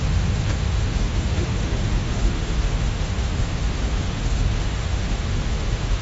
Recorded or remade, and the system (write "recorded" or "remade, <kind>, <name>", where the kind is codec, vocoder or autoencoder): remade, autoencoder, DAC-VAE